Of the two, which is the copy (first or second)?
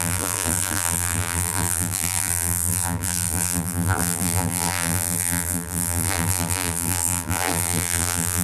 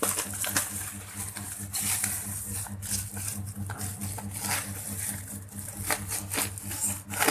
first